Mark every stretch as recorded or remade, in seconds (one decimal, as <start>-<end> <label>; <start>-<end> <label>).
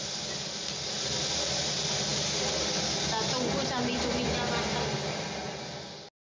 0.0-6.3 recorded